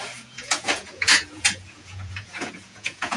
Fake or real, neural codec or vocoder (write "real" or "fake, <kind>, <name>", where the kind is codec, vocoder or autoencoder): fake, vocoder, Vocos